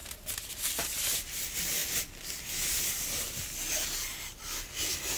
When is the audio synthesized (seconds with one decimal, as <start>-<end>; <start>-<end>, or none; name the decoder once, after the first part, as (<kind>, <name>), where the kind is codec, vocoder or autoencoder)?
none